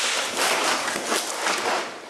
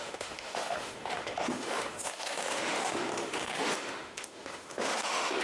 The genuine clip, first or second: first